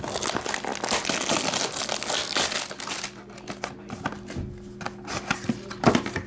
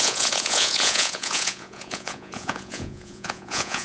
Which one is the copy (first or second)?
second